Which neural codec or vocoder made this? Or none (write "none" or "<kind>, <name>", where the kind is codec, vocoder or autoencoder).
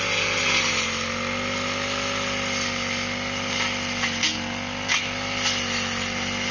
none